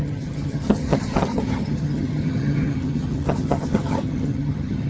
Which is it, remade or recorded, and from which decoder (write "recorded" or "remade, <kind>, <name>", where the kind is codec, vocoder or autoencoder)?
remade, vocoder, HiFi-GAN